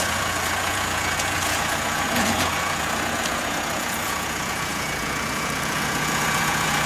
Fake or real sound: fake